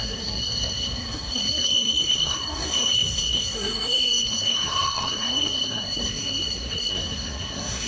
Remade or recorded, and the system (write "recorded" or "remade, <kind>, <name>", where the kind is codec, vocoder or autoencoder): remade, codec, SNAC